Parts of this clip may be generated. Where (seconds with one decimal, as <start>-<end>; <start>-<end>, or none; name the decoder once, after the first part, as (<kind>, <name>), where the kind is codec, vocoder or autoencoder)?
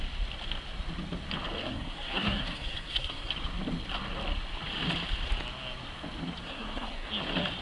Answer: 1.6-3.3 (codec, SNAC); 6.4-7.1